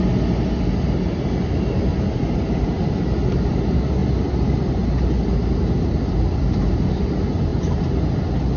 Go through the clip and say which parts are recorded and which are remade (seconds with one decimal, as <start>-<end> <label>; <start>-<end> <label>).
0.0-1.9 recorded; 1.9-3.0 remade; 3.0-7.5 recorded; 7.5-8.2 remade; 8.2-8.6 recorded